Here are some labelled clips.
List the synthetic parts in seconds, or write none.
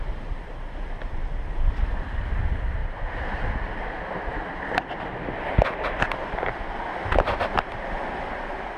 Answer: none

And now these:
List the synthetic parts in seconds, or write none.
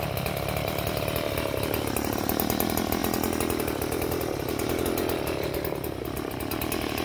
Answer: none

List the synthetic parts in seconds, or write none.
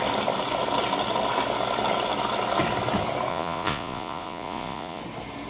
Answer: 3.3-5.0 (vocoder, Vocos)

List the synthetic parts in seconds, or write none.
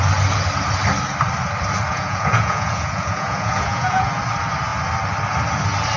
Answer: 1.9-4.2 (vocoder, Vocos)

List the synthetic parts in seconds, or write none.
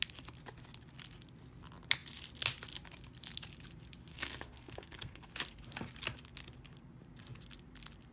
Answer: 4.1-5.3 (codec, SNAC)